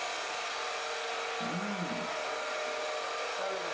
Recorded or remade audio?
recorded